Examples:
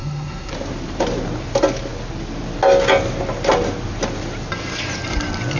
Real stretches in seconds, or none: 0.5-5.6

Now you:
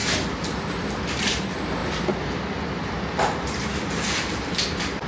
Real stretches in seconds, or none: 0.0-5.1

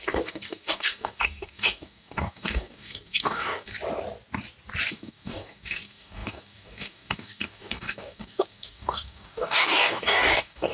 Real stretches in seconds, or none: 3.7-4.9

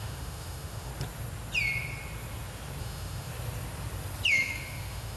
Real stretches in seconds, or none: 0.9-2.8; 3.3-4.3

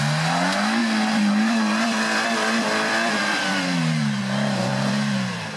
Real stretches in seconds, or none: 0.0-0.8; 4.2-4.7